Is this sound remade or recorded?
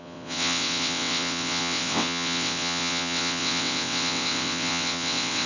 remade